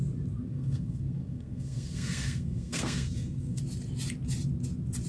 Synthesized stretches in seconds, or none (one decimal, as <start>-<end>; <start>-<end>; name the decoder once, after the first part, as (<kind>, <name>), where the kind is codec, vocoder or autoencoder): 0.5-3.6 (codec, SNAC)